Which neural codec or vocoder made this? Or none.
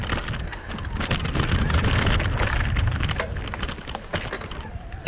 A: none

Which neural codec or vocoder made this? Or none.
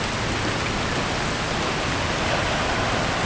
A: none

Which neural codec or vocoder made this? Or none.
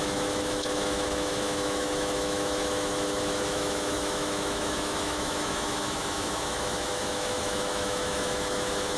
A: autoencoder, DAC-VAE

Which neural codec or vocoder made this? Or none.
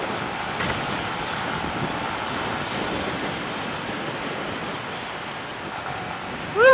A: vocoder, BigVGAN v2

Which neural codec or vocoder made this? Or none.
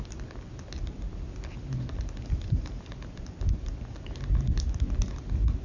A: none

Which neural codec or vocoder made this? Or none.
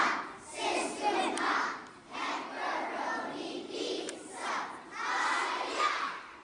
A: vocoder, BigVGAN v2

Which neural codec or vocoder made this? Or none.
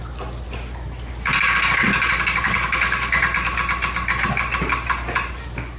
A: none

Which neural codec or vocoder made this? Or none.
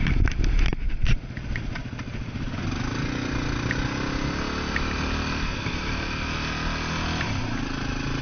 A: none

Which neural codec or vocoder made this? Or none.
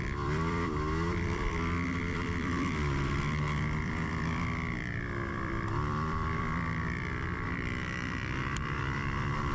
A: vocoder, BigVGAN v2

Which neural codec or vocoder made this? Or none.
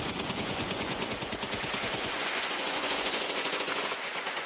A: vocoder, Vocos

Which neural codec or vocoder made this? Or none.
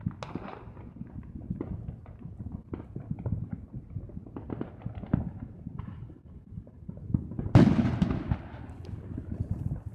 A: none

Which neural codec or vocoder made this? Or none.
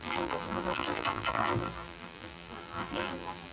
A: vocoder, BigVGAN v2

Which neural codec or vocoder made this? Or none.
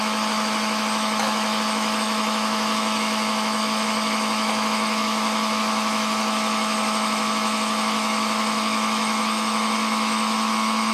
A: autoencoder, DAC-VAE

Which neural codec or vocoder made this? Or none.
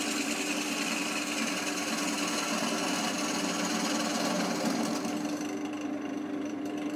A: none